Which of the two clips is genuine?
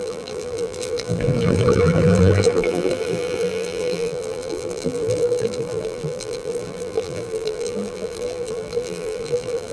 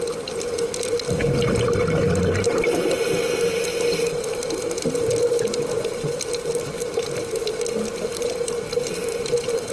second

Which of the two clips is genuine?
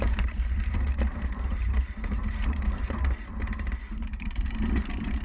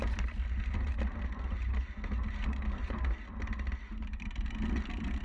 second